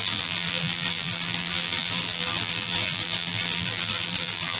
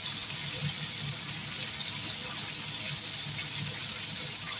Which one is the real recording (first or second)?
second